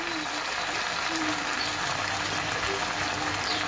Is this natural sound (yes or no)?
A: no